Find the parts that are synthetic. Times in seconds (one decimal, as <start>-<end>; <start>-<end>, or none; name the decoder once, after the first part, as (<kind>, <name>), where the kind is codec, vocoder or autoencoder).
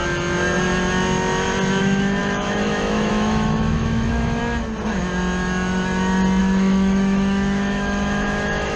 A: 1.8-4.4 (autoencoder, DAC-VAE); 6.4-8.8